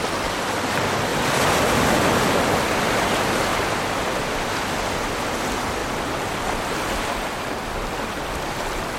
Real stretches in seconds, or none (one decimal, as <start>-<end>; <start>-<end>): 0.0-1.1; 1.8-5.8; 7.2-9.0